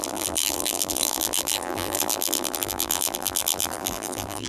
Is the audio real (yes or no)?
no